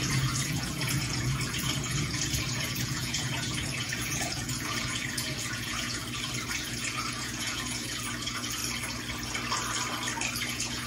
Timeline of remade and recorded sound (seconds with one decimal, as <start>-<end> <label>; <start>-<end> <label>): 0.0-6.0 remade; 6.0-6.5 recorded; 6.5-8.6 remade; 8.6-10.5 recorded; 10.5-10.9 remade